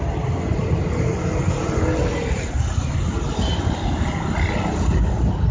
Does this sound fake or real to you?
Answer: real